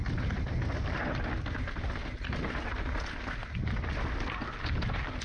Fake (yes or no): no